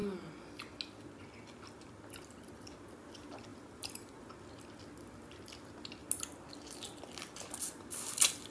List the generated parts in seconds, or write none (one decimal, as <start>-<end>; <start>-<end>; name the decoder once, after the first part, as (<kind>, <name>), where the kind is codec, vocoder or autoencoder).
3.5-4.3 (vocoder, BigVGAN v2)